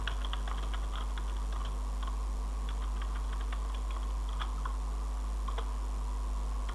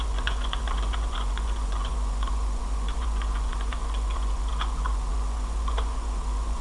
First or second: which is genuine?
first